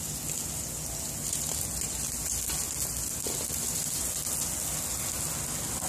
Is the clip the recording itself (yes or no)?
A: yes